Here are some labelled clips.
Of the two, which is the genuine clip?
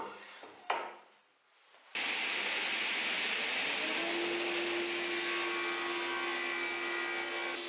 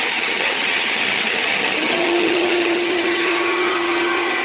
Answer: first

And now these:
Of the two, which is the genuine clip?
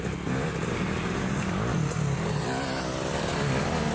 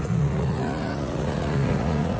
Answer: first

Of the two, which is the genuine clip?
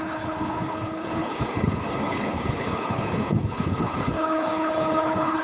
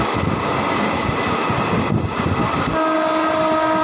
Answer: second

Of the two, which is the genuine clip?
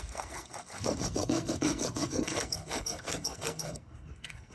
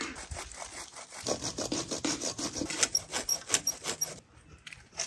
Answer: second